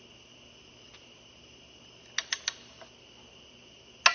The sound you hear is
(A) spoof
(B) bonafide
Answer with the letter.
B